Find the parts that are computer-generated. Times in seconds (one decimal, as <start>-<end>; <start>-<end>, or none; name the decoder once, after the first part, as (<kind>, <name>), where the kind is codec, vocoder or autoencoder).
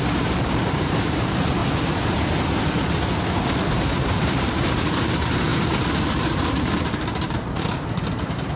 0.0-1.6 (vocoder, BigVGAN v2); 3.7-8.6